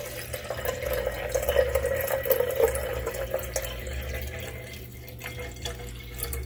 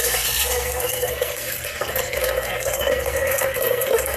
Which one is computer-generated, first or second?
second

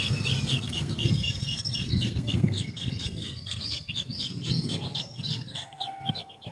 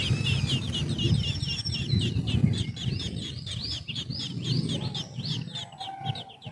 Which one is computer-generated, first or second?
first